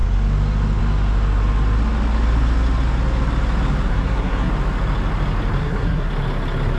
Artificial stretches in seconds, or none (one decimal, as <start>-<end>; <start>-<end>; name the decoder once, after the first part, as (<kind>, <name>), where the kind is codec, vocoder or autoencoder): 3.9-4.5 (codec, SNAC); 5.6-6.1